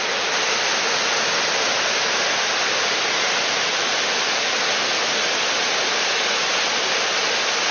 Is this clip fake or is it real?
real